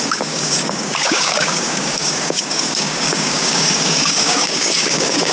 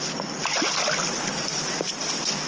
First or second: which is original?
second